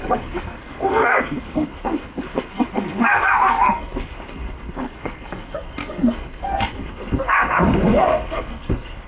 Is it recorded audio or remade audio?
remade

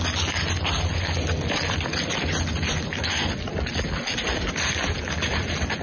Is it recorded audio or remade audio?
recorded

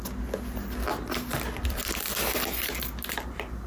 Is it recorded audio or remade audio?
recorded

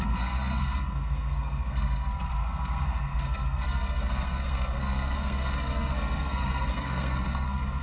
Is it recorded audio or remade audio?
remade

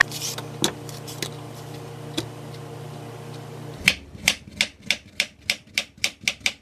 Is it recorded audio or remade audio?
recorded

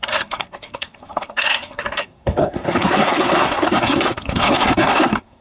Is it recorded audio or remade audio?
remade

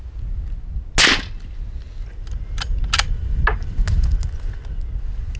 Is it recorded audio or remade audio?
recorded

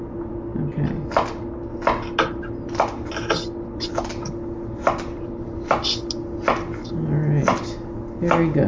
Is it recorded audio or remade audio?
recorded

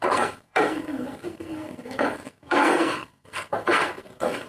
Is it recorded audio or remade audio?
remade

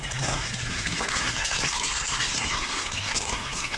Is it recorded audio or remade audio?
remade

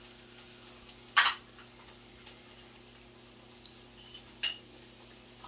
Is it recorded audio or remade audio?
recorded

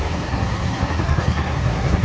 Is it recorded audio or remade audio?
remade